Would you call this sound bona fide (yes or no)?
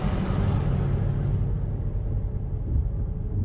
yes